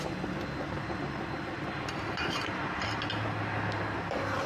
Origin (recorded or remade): recorded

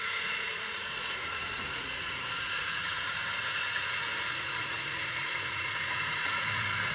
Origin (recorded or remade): remade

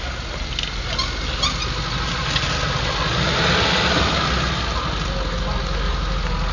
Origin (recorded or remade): recorded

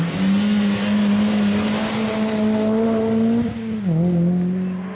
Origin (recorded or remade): recorded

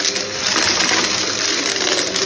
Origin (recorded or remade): recorded